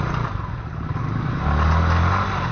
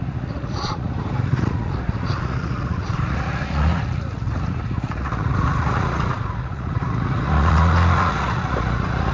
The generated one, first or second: second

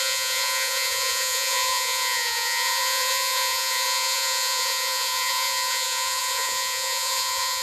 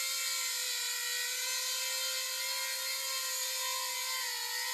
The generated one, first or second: first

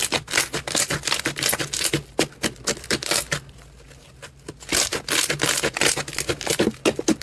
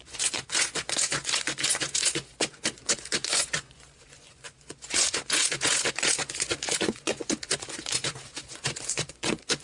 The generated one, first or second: second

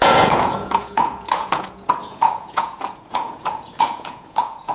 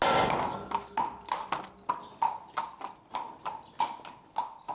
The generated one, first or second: first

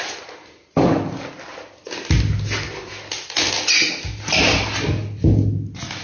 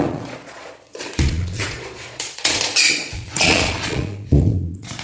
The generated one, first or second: second